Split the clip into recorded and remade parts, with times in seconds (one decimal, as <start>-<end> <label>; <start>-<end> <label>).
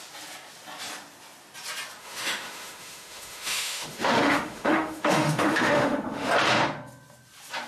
0.0-2.0 recorded; 2.0-6.3 remade; 6.3-7.7 recorded